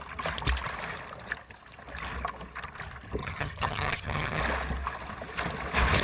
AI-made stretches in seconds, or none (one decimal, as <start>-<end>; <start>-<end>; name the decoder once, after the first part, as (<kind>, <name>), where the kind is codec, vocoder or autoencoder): 3.2-4.4 (vocoder, HiFi-GAN)